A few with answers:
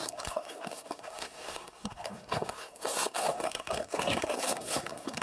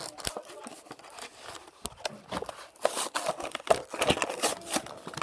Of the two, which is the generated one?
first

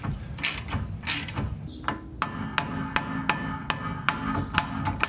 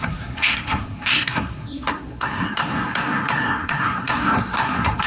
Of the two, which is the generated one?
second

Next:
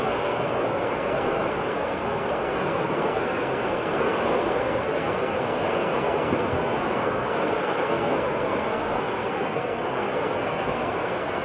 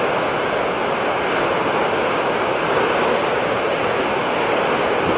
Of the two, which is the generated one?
first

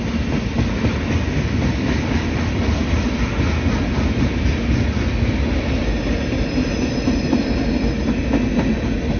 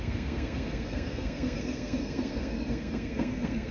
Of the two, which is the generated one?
second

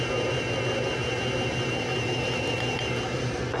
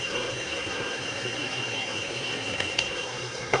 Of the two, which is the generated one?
second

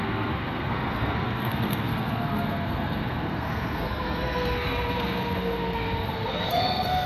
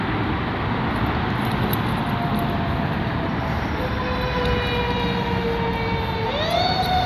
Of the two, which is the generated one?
first